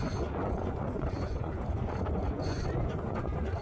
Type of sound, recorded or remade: remade